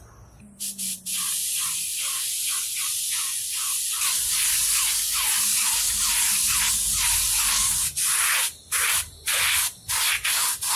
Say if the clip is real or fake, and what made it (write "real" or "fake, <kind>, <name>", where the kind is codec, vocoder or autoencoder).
real